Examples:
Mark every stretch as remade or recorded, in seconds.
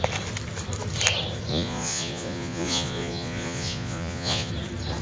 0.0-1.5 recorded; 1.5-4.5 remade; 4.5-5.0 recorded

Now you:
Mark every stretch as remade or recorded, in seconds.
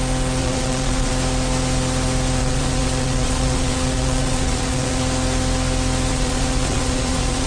0.0-0.4 recorded; 0.4-1.1 remade; 1.1-2.4 recorded; 2.4-5.0 remade; 5.0-6.1 recorded; 6.1-7.5 remade